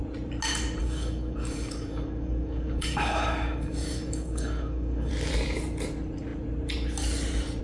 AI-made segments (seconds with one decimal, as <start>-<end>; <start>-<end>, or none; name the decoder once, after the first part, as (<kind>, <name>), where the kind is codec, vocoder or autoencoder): 0.8-5.1 (codec, DAC)

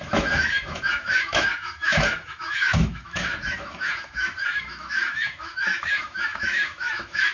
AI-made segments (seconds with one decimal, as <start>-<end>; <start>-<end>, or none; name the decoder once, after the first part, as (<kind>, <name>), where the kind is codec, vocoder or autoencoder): 0.0-7.3 (autoencoder, DAC-VAE)

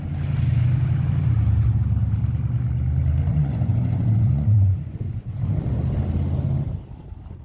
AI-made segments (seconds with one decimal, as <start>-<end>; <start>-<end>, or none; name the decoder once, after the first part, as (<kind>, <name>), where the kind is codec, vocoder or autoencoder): 3.3-5.4 (vocoder, Vocos)

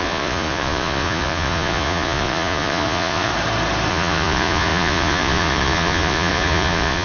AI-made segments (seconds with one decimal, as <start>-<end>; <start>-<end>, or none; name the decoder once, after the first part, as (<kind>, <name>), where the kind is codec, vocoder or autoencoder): 0.0-3.3 (vocoder, Vocos); 3.9-7.0